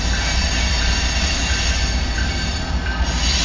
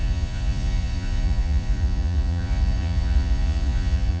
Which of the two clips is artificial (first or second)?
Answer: second